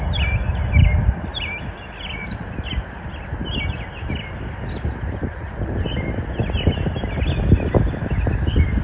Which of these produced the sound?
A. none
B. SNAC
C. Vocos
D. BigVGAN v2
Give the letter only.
A